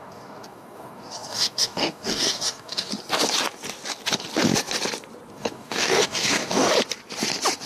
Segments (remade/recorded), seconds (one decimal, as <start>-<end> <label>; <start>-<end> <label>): 0.0-2.9 remade; 2.9-5.3 recorded; 5.3-6.7 remade; 6.7-7.7 recorded